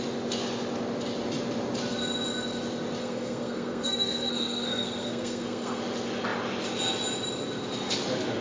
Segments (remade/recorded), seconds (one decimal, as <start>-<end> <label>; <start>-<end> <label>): 0.0-3.0 recorded; 3.0-5.8 remade; 5.8-8.4 recorded